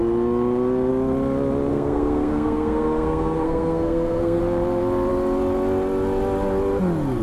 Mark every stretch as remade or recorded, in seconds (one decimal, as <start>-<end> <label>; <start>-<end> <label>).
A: 0.0-1.7 recorded; 1.7-4.4 remade; 4.4-7.2 recorded